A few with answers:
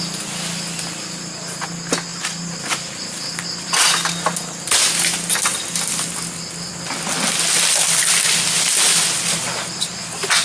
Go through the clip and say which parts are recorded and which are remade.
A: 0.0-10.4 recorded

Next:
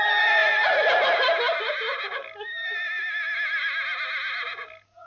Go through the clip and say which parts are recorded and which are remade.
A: 0.0-5.1 recorded

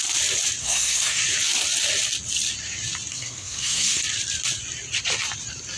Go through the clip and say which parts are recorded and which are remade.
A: 0.0-0.6 recorded; 0.6-1.2 remade; 1.2-3.1 recorded; 3.1-4.0 remade; 4.0-5.8 recorded

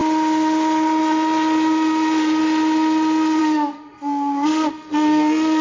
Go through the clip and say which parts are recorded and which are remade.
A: 0.0-3.4 recorded; 3.4-5.6 remade

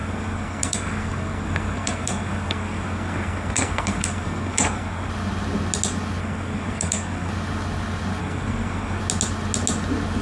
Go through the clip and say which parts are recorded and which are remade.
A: 0.0-5.1 remade; 5.1-6.2 recorded; 6.2-7.3 remade; 7.3-8.2 recorded; 8.2-9.0 remade; 9.0-10.2 recorded

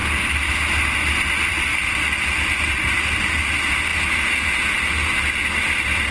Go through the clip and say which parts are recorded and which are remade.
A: 0.0-6.1 recorded